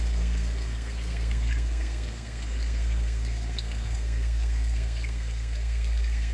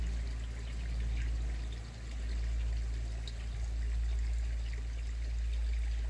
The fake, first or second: first